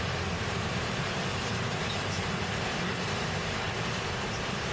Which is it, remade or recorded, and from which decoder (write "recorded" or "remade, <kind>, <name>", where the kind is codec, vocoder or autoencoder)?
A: remade, vocoder, BigVGAN v2